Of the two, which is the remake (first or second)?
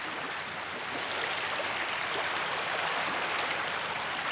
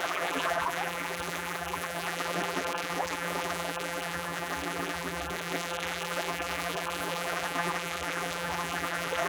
second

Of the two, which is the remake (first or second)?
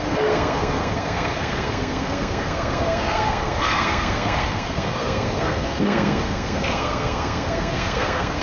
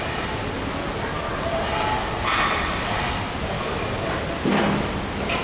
first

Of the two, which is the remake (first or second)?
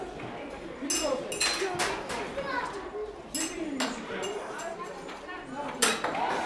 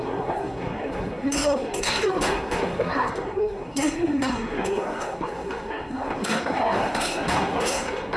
second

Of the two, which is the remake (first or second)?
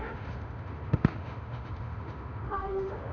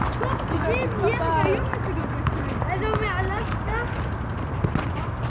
first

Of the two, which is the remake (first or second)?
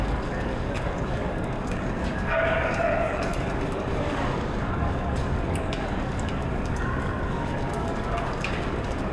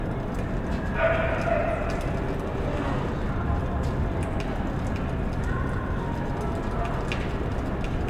first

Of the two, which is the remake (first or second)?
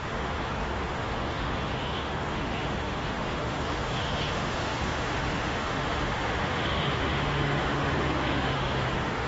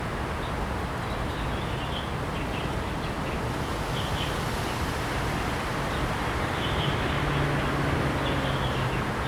first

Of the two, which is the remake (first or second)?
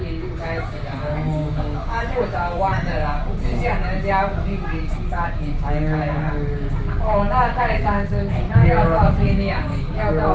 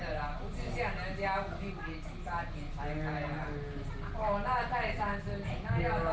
first